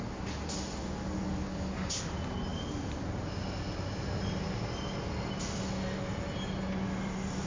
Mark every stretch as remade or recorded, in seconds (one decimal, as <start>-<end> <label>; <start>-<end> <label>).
0.0-7.5 recorded